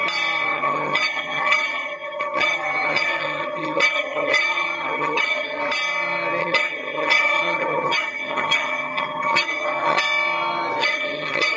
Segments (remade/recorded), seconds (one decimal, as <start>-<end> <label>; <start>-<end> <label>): 0.0-0.5 recorded; 0.5-5.6 remade; 5.6-6.4 recorded; 6.4-10.0 remade; 10.0-10.8 recorded; 10.8-11.6 remade